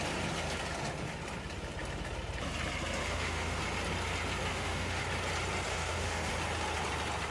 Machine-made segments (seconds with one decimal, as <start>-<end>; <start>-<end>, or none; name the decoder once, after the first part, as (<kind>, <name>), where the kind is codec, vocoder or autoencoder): 3.0-3.6 (autoencoder, DAC-VAE); 4.5-5.0; 5.7-6.3